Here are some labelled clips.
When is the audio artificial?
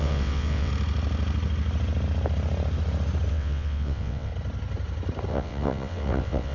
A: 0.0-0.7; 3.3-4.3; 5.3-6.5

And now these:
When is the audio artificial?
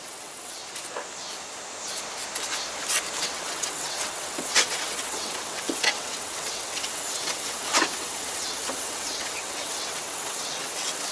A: 0.0-0.6; 3.2-11.1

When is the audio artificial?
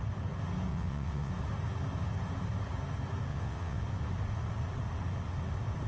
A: 0.7-1.3; 3.3-3.8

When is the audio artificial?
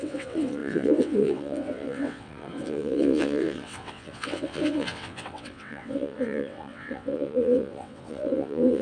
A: 0.0-8.8